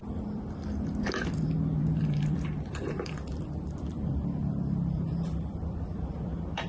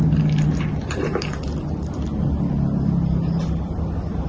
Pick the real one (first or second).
second